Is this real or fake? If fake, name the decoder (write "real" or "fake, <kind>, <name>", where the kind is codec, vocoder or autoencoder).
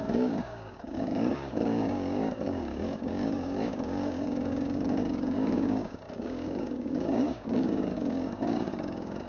fake, codec, DAC